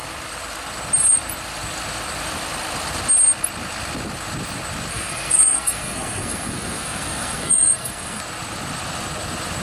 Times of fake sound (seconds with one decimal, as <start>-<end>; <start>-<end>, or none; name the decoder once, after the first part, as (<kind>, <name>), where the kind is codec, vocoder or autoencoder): 4.9-8.2 (codec, SNAC)